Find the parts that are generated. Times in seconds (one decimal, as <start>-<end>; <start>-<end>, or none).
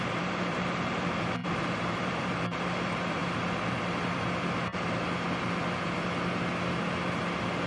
0.0-3.2